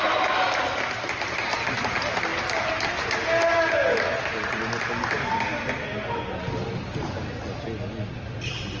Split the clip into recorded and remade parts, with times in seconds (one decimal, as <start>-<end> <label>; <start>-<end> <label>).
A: 0.0-8.8 recorded